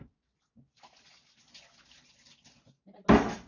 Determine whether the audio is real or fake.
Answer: real